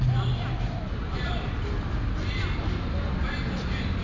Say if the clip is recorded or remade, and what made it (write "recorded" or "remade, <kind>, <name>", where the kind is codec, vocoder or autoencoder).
recorded